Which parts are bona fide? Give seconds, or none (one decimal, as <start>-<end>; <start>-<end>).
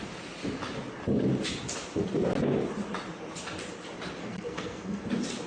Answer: 0.0-4.2; 5.1-5.5